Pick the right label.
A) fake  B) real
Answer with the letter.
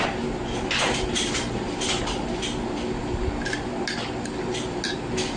B